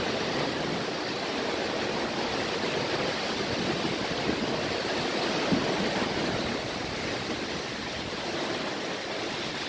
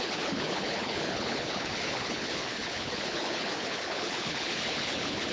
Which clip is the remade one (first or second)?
second